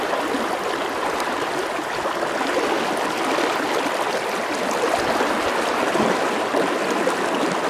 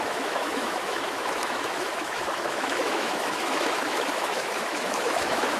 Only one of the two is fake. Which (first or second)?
second